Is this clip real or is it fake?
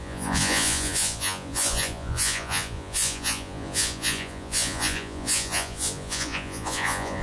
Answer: fake